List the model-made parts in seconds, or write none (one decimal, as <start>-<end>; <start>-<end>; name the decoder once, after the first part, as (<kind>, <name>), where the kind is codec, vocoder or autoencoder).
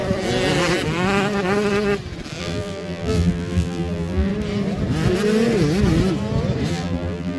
2.4-4.3 (vocoder, BigVGAN v2); 6.7-7.4